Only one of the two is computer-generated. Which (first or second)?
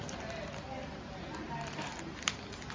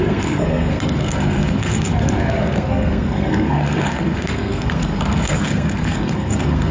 second